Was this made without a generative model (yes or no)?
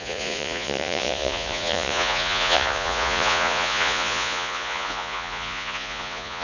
no